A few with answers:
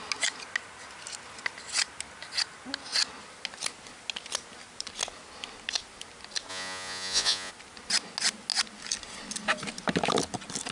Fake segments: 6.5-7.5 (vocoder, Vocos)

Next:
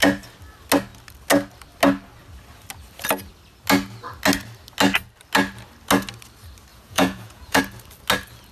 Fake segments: 6.7-7.6 (vocoder, Vocos)

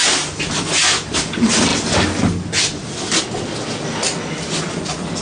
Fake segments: none

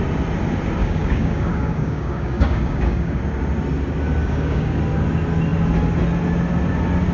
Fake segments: 0.8-3.2 (codec, DAC); 4.2-4.8

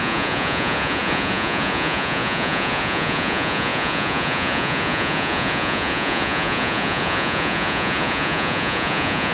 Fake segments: 0.0-9.3 (vocoder, Vocos)

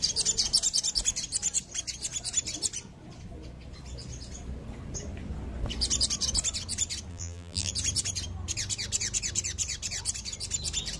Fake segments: 7.1-7.7 (vocoder, BigVGAN v2)

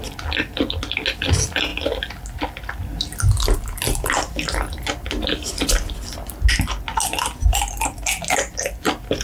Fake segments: none

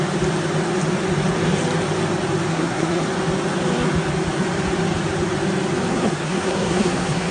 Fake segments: 2.5-3.0 (codec, SNAC); 5.9-7.3